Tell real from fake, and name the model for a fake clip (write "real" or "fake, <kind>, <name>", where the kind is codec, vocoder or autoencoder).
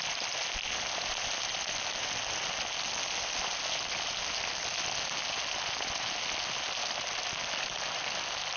real